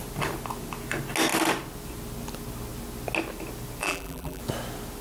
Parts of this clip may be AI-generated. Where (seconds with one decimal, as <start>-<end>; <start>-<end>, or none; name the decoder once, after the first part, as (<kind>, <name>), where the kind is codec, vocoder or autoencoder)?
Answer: 3.8-4.4 (vocoder, BigVGAN v2)